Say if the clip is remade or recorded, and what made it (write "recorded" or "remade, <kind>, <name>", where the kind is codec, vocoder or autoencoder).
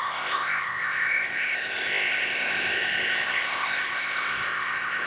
remade, codec, ZipCodec